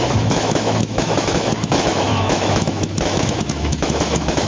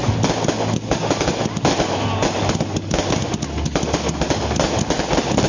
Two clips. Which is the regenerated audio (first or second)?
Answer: first